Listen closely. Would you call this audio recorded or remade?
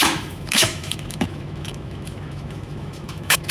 remade